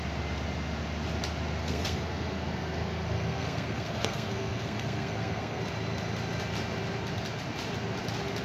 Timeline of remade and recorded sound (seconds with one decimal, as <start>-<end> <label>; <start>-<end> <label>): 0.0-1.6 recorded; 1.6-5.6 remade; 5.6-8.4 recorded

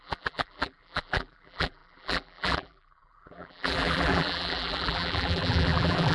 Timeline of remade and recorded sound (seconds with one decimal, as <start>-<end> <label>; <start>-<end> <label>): 0.0-6.1 remade

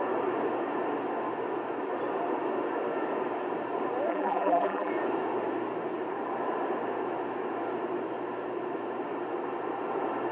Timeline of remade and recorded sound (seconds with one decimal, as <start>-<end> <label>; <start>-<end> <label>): 0.0-4.1 recorded; 4.1-4.9 remade; 4.9-10.3 recorded